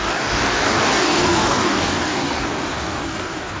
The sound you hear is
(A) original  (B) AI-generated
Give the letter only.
B